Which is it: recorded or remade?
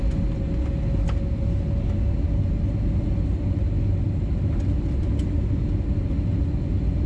recorded